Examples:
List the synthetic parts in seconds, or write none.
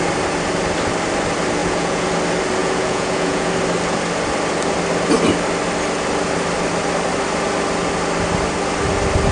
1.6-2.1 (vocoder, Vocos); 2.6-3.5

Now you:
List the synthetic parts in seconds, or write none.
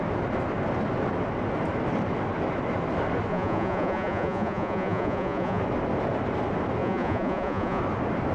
3.3-5.6 (vocoder, Vocos); 6.8-7.8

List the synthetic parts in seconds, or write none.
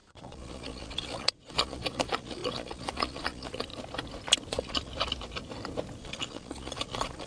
0.0-3.7 (vocoder, Vocos); 4.5-4.9; 6.0-7.3